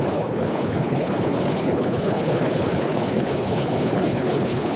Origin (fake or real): fake